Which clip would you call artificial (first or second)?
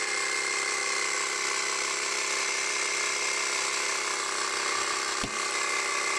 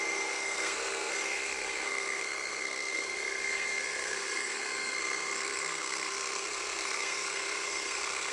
second